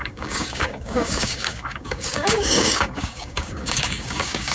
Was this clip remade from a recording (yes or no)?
yes